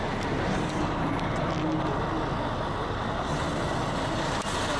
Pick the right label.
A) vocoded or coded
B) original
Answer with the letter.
B